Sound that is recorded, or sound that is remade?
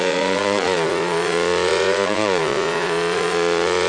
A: remade